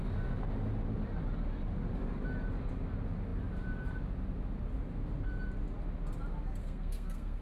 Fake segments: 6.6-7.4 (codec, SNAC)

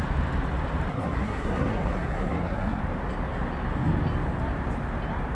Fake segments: 0.9-2.8 (codec, SNAC)